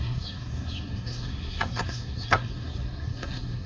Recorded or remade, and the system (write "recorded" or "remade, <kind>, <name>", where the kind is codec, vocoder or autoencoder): remade, codec, SNAC